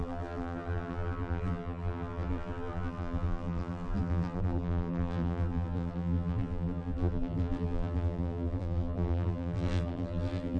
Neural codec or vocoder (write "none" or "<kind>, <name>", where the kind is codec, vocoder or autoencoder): vocoder, BigVGAN v2